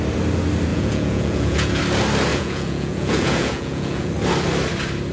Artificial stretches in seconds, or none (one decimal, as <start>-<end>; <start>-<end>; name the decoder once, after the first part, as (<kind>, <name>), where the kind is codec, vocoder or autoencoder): 0.7-1.8 (vocoder, Vocos); 2.3-4.1